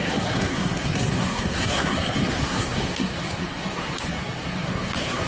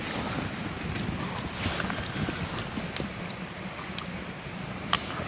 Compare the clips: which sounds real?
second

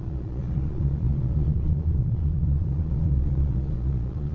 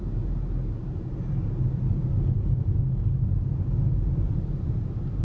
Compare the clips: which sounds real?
second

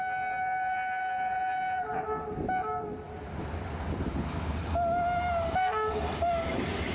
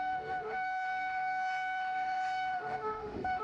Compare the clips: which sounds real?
first